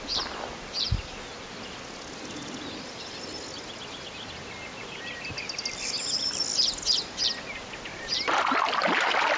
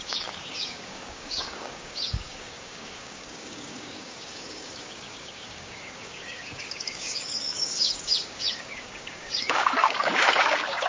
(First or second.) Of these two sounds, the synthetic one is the second